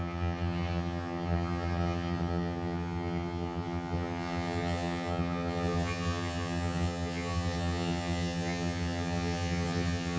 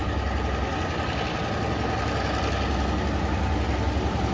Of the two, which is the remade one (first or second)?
first